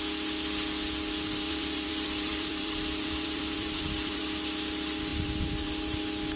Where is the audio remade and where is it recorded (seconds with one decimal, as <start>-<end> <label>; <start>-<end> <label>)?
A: 0.0-1.3 recorded; 1.3-4.2 remade; 4.2-5.1 recorded; 5.1-5.7 remade; 5.7-6.4 recorded